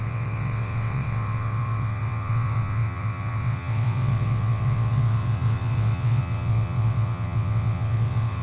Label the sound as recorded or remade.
remade